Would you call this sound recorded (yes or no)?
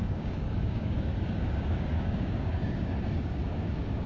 no